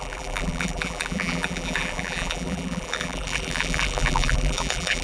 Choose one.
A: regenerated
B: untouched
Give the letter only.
A